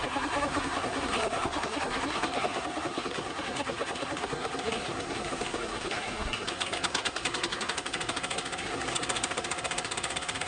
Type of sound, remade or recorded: remade